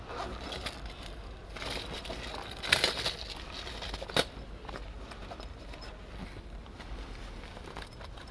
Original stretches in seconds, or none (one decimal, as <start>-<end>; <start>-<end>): 0.0-8.3